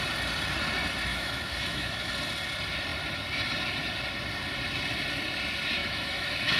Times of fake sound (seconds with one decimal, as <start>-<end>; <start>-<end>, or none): 1.1-2.1; 5.8-6.6